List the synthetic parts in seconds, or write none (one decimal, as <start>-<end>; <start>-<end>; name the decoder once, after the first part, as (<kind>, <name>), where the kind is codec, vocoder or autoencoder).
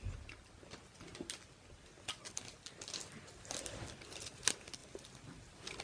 none